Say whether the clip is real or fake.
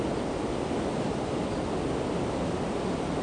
real